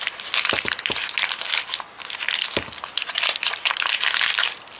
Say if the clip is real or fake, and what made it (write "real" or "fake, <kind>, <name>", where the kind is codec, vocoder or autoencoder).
real